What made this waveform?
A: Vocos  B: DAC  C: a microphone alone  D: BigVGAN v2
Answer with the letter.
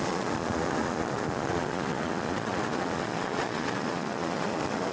A